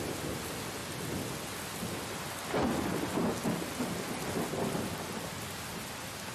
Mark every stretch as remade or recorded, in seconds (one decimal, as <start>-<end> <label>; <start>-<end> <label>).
0.0-6.3 recorded